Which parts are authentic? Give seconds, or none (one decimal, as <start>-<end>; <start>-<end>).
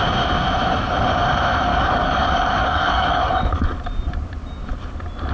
0.0-1.7; 3.8-5.3